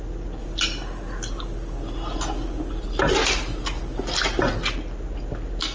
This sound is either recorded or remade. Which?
recorded